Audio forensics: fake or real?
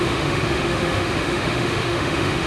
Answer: fake